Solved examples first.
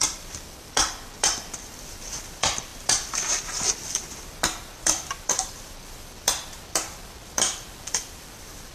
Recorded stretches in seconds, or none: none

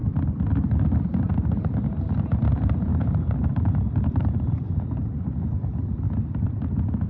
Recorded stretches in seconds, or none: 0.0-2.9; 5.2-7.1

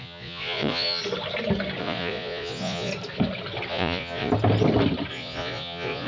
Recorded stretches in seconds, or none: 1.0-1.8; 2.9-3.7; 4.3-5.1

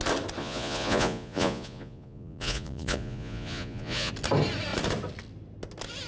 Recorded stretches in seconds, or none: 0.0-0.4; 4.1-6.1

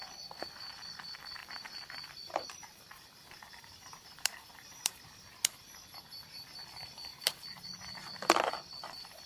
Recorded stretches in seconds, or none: 0.0-1.4; 5.0-7.1; 8.0-9.3